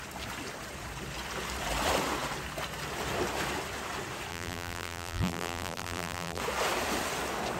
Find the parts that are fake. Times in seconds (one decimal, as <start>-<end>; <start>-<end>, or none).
4.3-6.4